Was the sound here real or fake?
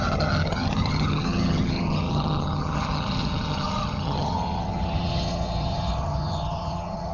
fake